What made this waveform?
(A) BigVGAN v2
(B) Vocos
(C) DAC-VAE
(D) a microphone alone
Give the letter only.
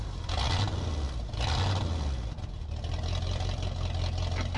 D